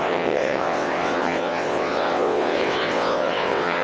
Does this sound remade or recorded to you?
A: remade